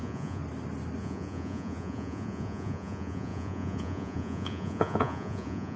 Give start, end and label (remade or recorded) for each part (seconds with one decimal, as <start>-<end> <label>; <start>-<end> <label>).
0.0-0.4 remade; 0.4-1.0 recorded; 1.0-5.8 remade